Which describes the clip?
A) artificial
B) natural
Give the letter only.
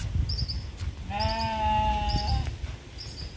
B